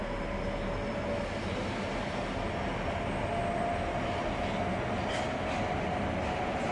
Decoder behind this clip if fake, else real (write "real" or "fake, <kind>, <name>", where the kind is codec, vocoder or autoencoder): real